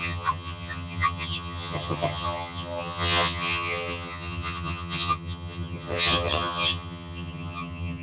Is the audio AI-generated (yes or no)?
yes